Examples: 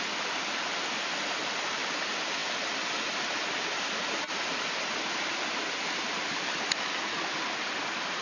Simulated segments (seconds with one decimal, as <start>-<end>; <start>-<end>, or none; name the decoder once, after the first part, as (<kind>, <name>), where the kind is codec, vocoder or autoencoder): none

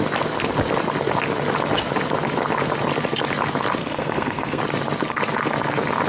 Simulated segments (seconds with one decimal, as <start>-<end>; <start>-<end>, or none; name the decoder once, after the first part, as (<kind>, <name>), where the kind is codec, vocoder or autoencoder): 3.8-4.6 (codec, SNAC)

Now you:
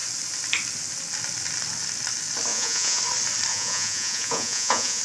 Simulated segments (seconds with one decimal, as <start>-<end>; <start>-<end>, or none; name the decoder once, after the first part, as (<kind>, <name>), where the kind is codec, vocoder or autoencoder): 2.5-3.0 (vocoder, Vocos); 3.5-5.0

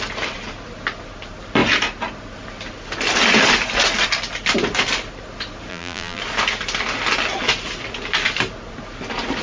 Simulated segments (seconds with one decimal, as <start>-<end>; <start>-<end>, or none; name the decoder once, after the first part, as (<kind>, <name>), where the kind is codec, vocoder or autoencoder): 5.7-6.2 (vocoder, BigVGAN v2)